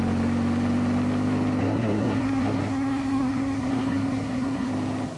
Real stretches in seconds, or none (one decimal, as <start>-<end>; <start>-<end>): 0.0-1.6; 4.7-5.2